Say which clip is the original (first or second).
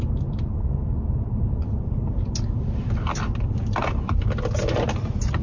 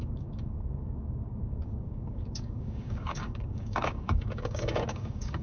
first